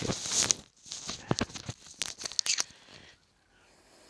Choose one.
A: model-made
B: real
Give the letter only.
B